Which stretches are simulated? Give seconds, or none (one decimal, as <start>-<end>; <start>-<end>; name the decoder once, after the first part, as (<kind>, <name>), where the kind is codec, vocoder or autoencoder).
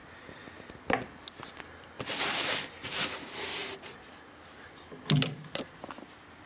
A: none